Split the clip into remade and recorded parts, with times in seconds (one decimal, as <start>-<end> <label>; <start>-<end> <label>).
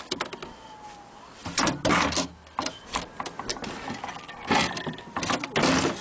0.0-6.0 recorded